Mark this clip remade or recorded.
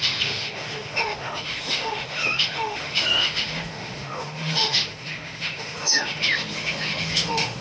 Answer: remade